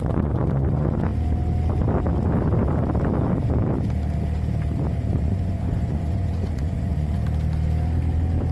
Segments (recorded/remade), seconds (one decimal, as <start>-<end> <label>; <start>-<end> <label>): 0.0-1.1 remade; 1.1-5.1 recorded; 5.1-7.2 remade; 7.2-8.5 recorded